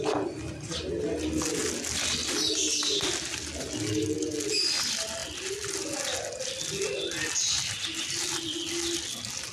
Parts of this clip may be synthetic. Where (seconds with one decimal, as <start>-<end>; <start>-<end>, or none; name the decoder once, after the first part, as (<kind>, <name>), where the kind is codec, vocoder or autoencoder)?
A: none